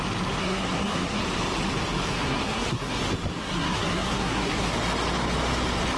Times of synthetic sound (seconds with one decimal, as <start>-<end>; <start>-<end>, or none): 0.4-1.2; 2.1-3.0; 3.4-4.7